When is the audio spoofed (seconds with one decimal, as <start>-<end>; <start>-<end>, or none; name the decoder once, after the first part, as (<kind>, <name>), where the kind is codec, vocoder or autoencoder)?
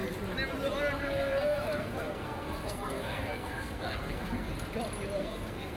1.0-4.5 (codec, SNAC); 5.2-5.8